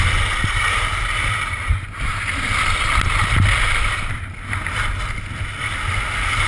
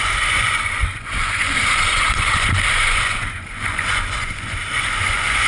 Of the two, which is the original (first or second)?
first